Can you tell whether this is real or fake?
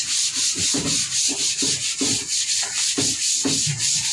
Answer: real